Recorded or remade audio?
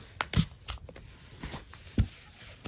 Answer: recorded